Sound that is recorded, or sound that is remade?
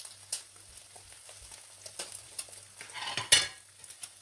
recorded